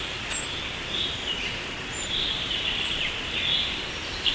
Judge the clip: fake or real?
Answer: fake